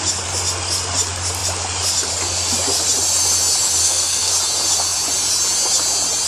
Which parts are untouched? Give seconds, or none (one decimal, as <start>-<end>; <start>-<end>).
0.0-3.8; 4.3-6.3